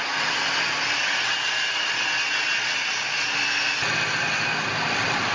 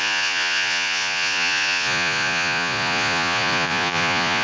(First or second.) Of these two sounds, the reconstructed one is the second